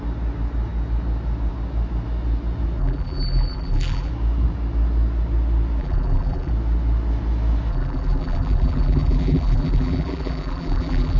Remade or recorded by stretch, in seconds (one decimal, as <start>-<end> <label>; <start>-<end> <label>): 0.0-2.8 recorded; 2.8-4.1 remade; 4.1-5.8 recorded; 5.8-6.5 remade; 6.5-7.7 recorded; 7.7-11.2 remade